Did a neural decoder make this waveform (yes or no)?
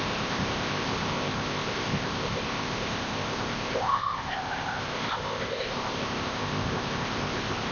yes